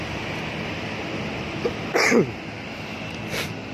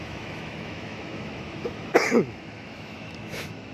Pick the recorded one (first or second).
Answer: first